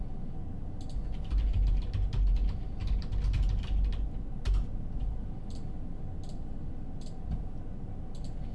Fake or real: real